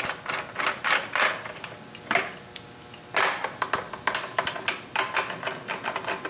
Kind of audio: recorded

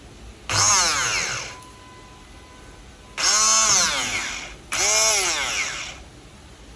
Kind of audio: recorded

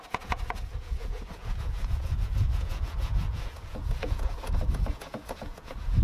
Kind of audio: remade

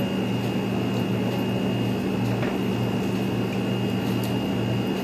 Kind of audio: recorded